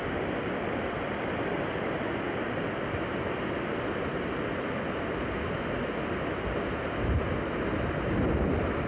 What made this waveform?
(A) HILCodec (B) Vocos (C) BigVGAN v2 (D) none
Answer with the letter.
D